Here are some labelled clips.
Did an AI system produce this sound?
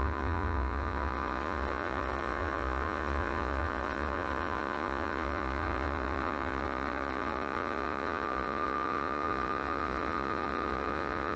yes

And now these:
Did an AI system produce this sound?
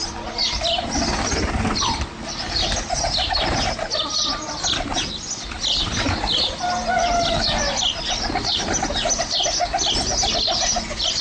no